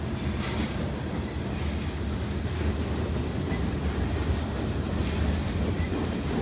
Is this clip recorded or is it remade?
recorded